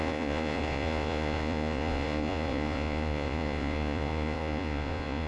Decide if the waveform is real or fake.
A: fake